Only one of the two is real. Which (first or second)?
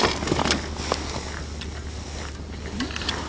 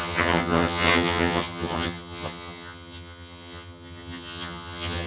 first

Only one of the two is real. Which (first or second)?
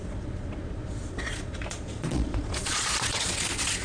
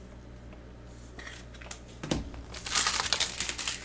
second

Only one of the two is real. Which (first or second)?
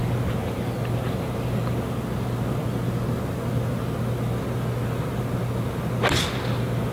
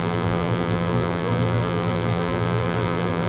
first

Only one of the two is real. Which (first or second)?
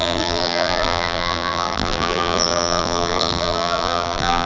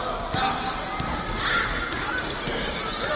second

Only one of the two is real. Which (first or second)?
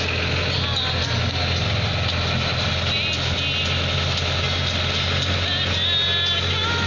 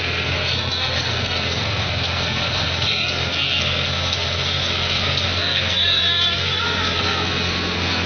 first